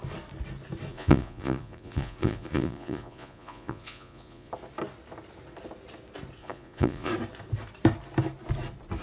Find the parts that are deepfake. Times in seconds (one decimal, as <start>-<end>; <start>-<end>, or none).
0.9-4.5; 6.4-7.1